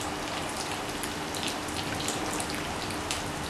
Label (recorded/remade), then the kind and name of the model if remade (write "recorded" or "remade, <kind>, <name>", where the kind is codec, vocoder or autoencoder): recorded